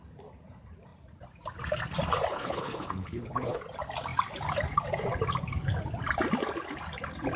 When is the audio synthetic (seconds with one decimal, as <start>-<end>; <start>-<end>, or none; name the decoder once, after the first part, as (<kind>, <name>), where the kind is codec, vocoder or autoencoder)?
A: 2.3-3.6 (codec, HILCodec)